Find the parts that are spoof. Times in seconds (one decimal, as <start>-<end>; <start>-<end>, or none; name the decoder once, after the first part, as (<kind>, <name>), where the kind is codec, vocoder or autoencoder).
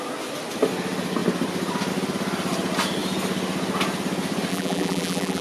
4.5-5.4 (vocoder, BigVGAN v2)